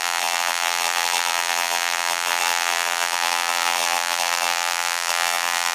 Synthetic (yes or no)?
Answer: yes